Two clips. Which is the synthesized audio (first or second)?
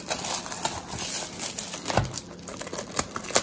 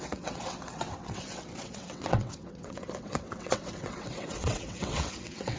second